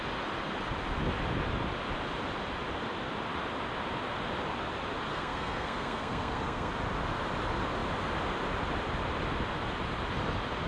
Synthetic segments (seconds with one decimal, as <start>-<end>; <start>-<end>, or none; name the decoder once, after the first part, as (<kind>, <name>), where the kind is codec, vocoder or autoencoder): 5.1-6.7 (codec, SNAC)

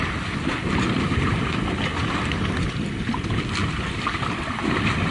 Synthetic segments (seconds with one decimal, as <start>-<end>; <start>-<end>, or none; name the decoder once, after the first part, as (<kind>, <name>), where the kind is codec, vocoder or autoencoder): 1.9-2.5 (vocoder, BigVGAN v2); 3.6-5.1

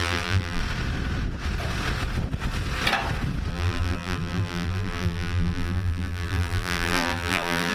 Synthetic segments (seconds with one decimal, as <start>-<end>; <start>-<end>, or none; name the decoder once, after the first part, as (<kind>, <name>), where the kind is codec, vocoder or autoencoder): 0.0-0.6 (vocoder, BigVGAN v2); 3.5-7.7

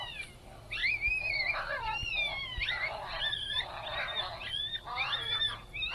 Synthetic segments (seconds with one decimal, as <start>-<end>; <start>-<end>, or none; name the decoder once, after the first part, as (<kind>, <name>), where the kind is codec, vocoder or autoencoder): none

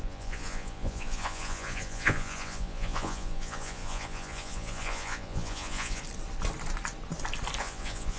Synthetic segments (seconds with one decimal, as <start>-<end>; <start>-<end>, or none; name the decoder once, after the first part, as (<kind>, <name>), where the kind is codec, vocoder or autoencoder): 0.0-6.0 (vocoder, Vocos); 7.6-8.2

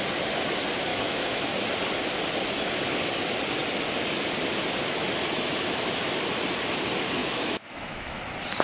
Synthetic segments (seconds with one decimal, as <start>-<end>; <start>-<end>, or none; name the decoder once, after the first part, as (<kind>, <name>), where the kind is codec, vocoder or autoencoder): 0.9-1.5 (autoencoder, DAC-VAE); 7.2-8.2

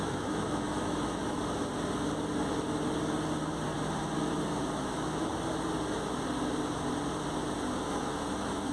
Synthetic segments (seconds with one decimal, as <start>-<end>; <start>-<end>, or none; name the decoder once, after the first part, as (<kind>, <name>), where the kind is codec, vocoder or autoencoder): 0.0-1.2 (autoencoder, DAC-VAE); 4.8-5.3; 7.9-8.7

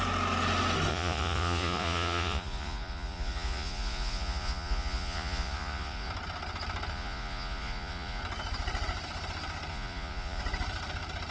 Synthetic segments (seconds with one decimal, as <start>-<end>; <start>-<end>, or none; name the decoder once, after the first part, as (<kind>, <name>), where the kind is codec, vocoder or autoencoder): 0.9-6.1 (vocoder, Vocos); 6.9-8.2; 9.7-10.4